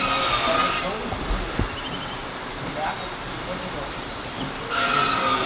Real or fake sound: real